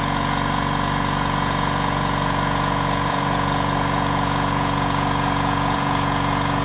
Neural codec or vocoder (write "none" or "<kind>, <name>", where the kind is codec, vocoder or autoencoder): vocoder, Vocos